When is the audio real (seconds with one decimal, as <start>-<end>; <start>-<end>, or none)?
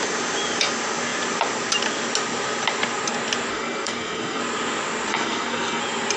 0.0-3.5; 4.4-5.1; 5.8-6.2